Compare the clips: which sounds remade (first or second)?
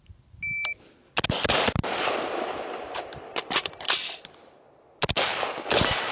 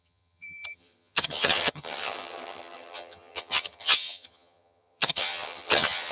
second